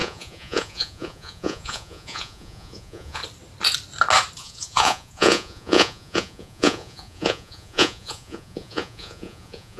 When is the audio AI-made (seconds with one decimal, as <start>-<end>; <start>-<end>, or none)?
0.0-3.2; 4.4-9.8